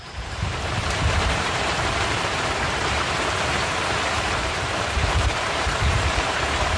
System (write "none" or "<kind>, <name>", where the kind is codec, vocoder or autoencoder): vocoder, BigVGAN v2